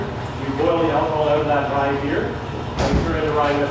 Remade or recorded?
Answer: recorded